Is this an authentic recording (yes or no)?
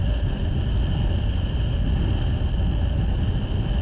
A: yes